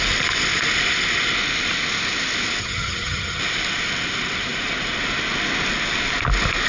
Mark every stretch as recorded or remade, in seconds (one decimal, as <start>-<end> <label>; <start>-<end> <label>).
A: 0.0-2.6 recorded; 2.6-3.4 remade; 3.4-6.7 recorded